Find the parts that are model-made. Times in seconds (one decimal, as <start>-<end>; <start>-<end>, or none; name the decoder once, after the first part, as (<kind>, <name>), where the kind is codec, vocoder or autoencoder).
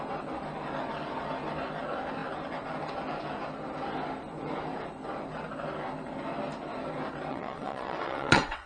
7.3-8.7 (vocoder, WaveNeXt)